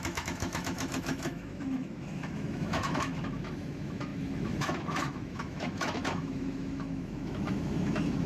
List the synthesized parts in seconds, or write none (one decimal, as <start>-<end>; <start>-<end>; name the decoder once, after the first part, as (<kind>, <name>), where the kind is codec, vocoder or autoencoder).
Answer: 0.0-8.3 (autoencoder, DAC-VAE)